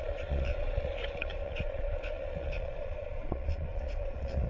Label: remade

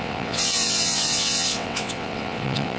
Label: remade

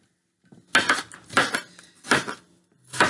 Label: recorded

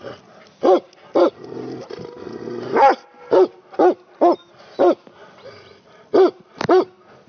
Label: recorded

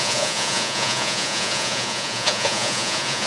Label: remade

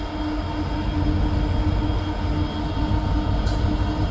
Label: recorded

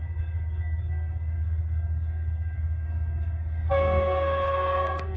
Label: remade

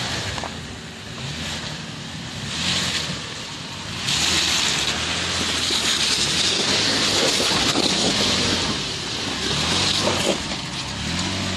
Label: recorded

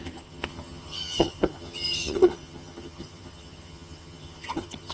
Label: remade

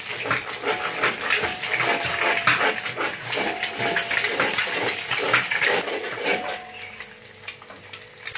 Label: recorded